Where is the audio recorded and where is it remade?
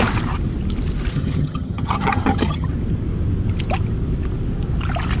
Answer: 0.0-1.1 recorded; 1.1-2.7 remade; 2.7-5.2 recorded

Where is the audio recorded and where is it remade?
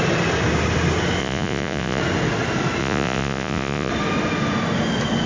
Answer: 0.0-1.2 recorded; 1.2-2.0 remade; 2.0-2.8 recorded; 2.8-3.9 remade; 3.9-5.3 recorded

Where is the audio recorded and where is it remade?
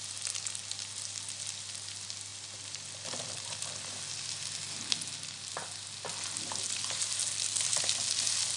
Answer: 0.0-8.6 recorded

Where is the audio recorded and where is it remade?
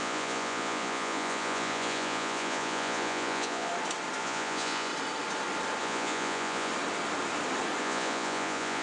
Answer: 0.0-3.7 remade; 3.7-4.2 recorded; 4.2-4.9 remade; 4.9-5.8 recorded; 5.8-6.7 remade; 6.7-7.8 recorded; 7.8-8.8 remade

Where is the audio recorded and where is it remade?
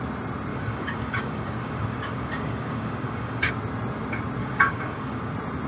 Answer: 0.0-0.5 recorded; 0.5-3.5 remade; 3.5-4.4 recorded; 4.4-5.3 remade; 5.3-5.7 recorded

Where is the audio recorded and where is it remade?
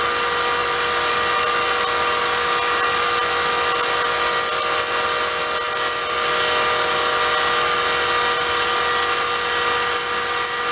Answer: 0.0-10.7 recorded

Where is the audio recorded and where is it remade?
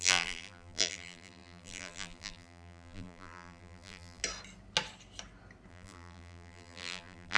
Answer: 0.0-4.2 remade; 4.2-5.7 recorded; 5.7-7.4 remade